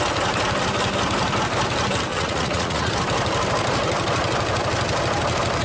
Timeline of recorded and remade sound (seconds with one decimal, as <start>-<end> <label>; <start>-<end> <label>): 0.0-2.1 recorded; 2.1-2.9 remade; 2.9-5.6 recorded